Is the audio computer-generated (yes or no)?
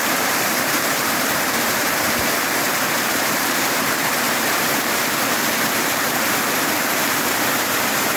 yes